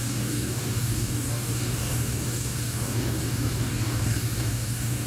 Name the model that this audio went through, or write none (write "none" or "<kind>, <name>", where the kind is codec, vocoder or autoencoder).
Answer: codec, DAC